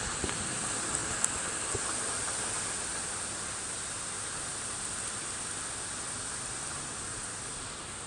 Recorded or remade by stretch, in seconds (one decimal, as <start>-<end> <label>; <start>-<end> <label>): 0.0-8.1 recorded